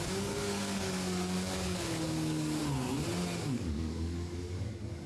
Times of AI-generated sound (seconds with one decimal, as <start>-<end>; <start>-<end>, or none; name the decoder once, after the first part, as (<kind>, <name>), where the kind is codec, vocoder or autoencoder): 0.0-2.6 (codec, DAC); 3.4-5.1